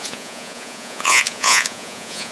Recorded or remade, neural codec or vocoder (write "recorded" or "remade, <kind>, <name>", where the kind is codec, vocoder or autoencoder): remade, vocoder, Vocos